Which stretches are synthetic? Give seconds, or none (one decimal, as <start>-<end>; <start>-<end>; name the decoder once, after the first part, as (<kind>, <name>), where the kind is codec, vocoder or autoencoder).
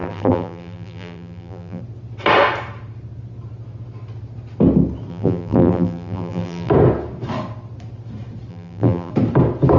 0.0-1.8 (vocoder, BigVGAN v2); 5.1-6.7; 8.5-9.1